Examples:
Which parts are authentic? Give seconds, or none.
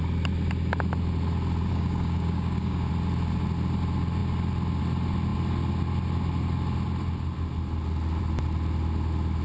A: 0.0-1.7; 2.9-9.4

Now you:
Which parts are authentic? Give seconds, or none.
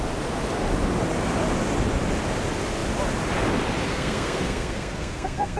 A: 0.0-3.9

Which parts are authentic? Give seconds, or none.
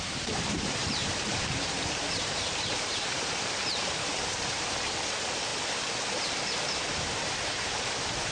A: 5.5-6.6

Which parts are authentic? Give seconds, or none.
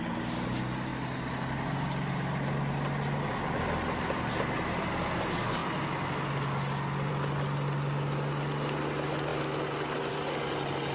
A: 0.0-10.9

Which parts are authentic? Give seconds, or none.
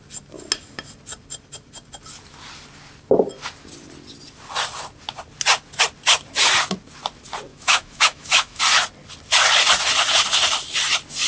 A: 0.0-7.5; 8.6-11.3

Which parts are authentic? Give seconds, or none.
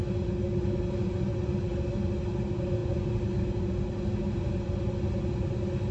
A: 0.0-5.9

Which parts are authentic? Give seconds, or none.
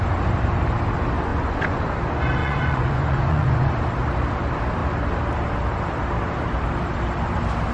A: 0.0-1.3; 1.9-2.4; 3.8-7.7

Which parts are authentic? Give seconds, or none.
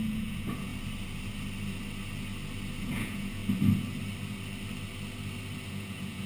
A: 0.7-2.8; 3.4-5.7